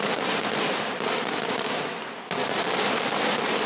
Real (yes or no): yes